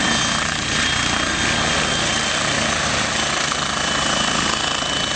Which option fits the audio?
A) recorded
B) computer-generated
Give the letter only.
A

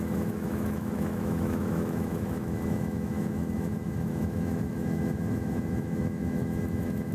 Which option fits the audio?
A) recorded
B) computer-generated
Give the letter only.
B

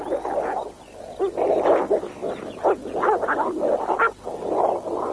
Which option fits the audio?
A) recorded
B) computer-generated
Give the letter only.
A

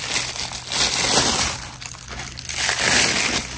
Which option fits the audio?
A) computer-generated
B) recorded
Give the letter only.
B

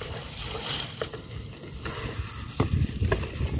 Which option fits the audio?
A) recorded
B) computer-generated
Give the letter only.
A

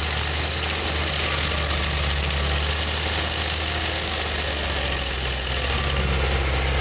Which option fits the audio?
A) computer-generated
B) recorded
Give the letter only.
B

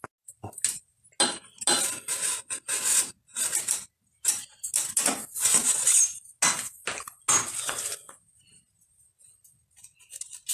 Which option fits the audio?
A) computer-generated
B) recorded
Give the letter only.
B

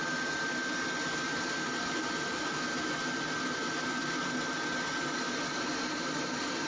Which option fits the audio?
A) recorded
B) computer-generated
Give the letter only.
A